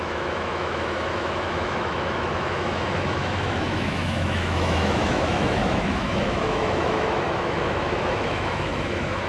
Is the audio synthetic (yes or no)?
yes